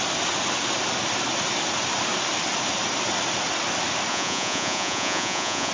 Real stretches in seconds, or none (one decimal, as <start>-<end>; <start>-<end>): 0.0-4.1

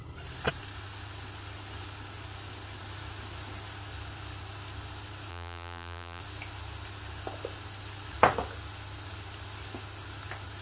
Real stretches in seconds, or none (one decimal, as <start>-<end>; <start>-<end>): 0.0-5.3; 6.2-10.6